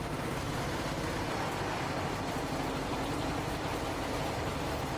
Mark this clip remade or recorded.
recorded